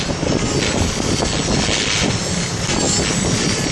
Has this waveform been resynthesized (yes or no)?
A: no